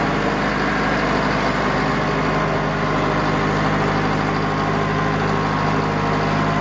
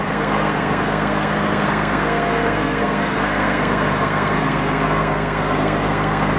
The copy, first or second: second